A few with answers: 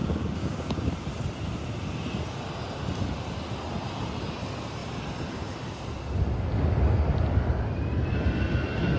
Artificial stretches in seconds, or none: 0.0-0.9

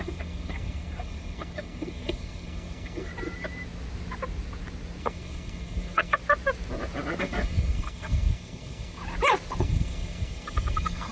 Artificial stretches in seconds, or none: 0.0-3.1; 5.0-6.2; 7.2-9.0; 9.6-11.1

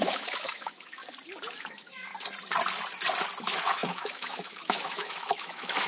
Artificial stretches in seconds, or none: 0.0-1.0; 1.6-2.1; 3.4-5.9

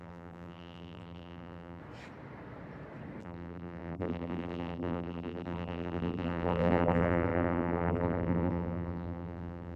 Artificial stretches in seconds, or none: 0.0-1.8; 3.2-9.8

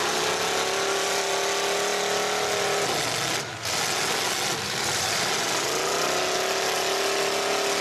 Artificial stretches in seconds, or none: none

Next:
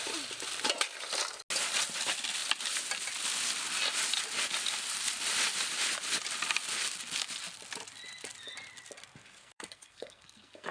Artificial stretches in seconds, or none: 9.2-10.7